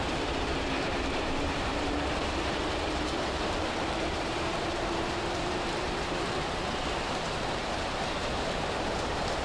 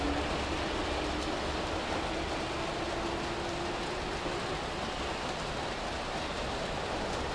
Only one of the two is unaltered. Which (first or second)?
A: second